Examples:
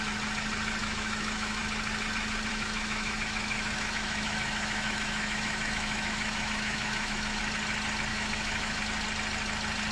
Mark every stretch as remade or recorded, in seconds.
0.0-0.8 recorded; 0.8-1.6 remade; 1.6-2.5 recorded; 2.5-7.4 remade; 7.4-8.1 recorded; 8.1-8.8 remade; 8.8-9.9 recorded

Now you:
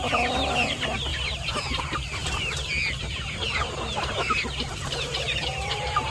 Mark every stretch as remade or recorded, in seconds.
0.0-6.1 remade

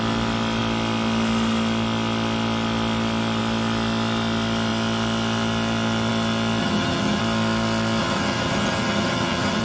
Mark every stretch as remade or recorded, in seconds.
0.0-6.6 recorded; 6.6-7.2 remade; 7.2-8.0 recorded; 8.0-9.6 remade

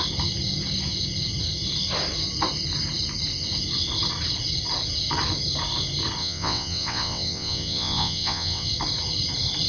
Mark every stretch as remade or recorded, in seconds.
0.0-6.2 recorded; 6.2-8.7 remade; 8.7-9.7 recorded

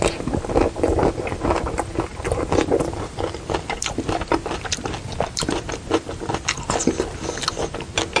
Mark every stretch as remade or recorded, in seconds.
0.0-8.2 recorded

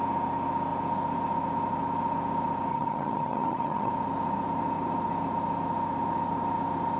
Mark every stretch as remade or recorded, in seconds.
0.0-2.7 recorded; 2.7-3.9 remade; 3.9-7.0 recorded

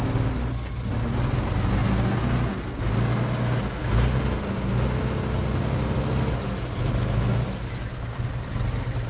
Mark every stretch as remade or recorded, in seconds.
0.0-9.1 recorded